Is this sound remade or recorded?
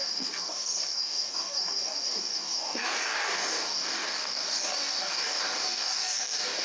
remade